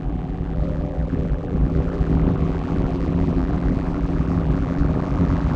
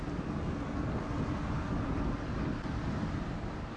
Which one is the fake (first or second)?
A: first